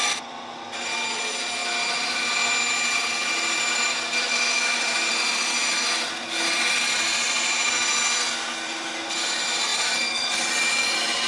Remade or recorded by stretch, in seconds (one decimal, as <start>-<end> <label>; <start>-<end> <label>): 0.0-11.3 recorded